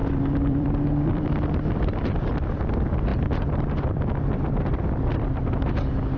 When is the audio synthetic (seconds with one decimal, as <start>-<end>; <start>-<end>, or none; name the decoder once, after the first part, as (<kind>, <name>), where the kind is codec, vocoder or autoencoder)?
0.0-2.2 (vocoder, BigVGAN v2); 3.1-5.1